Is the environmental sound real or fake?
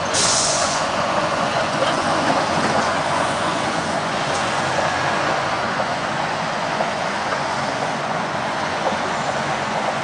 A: fake